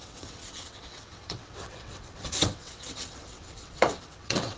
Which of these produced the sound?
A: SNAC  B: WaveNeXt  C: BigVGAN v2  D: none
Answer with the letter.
B